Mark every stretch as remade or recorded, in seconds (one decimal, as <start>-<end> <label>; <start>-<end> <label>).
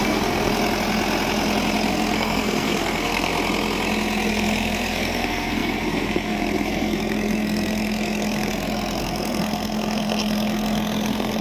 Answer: 0.0-0.5 remade; 0.5-1.9 recorded; 1.9-3.3 remade; 3.3-4.3 recorded; 4.3-8.5 remade; 8.5-9.0 recorded; 9.0-11.4 remade